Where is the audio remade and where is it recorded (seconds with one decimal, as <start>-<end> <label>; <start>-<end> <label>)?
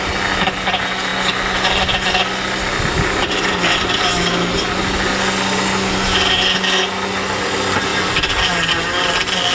0.0-9.5 recorded